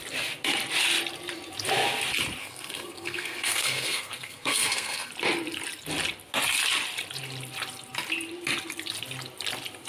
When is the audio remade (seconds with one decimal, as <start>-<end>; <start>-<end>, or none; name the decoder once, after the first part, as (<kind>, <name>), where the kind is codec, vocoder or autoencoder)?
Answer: 2.4-5.1 (codec, SNAC)